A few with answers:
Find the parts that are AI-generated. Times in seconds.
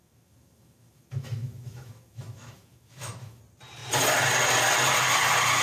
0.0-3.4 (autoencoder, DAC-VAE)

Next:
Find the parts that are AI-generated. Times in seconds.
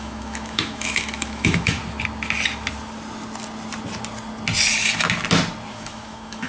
0.0-1.8 (autoencoder, DAC-VAE); 5.7-6.5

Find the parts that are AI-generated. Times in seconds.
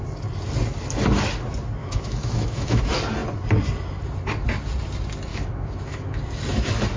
1.8-2.8 (autoencoder, DAC-VAE); 5.3-6.2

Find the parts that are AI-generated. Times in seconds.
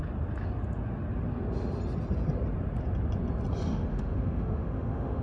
3.9-5.2 (autoencoder, DAC-VAE)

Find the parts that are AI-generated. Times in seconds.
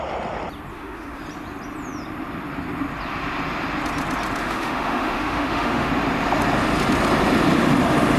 0.7-1.2 (autoencoder, DAC-VAE); 4.4-5.9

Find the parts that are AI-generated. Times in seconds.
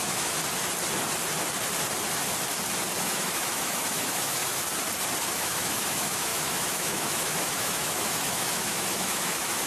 0.0-0.4 (autoencoder, DAC-VAE); 3.0-4.4; 5.3-9.7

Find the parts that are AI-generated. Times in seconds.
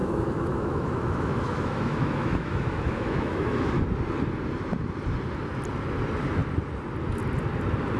0.0-3.8 (autoencoder, DAC-VAE)